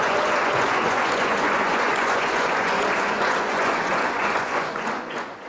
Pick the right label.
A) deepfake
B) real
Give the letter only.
A